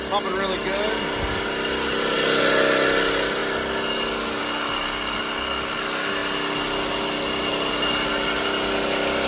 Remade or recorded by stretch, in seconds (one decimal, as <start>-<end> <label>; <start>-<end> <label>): 0.0-9.3 recorded

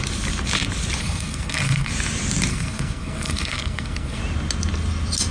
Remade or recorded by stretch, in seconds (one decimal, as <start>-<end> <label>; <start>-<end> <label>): 0.0-1.0 recorded; 1.0-1.9 remade; 1.9-2.5 recorded; 2.5-4.2 remade; 4.2-5.3 recorded

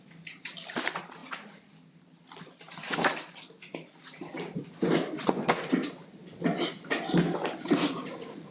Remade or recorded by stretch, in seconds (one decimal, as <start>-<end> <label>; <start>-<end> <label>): 0.0-8.5 recorded

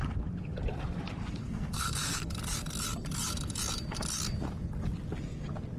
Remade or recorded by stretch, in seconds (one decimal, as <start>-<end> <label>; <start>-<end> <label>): 0.0-1.4 recorded; 1.4-2.3 remade; 2.3-5.8 recorded